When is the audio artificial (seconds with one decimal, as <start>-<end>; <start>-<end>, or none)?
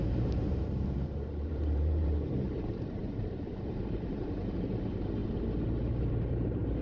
0.0-5.2; 6.1-6.8